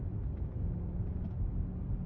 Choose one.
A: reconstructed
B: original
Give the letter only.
B